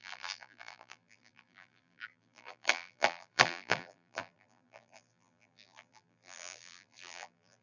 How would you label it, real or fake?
fake